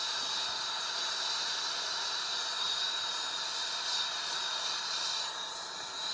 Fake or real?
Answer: real